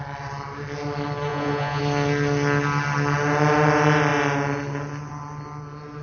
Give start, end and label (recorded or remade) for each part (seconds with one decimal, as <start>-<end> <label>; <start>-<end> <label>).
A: 0.0-1.3 recorded; 1.3-1.8 remade; 1.8-6.0 recorded